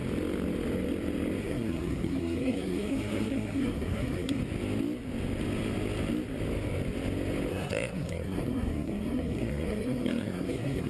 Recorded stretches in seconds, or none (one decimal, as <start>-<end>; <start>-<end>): 0.0-1.4; 4.4-7.5